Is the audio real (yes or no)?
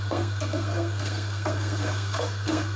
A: no